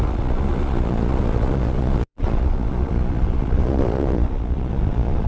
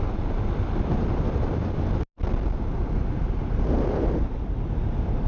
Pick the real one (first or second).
second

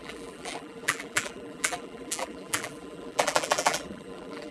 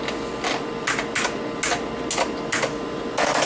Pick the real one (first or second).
second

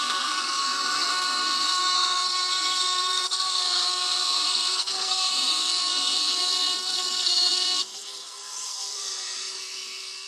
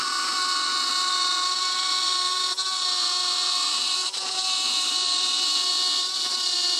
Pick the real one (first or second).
second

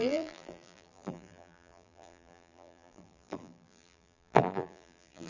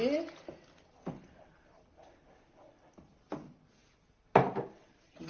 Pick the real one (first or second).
second